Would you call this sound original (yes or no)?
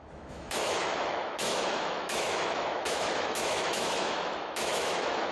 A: no